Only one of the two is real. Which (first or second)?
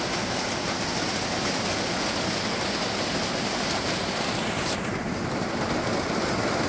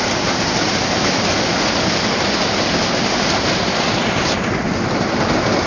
first